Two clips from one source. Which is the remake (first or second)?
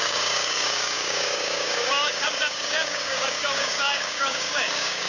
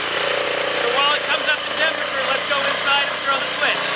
first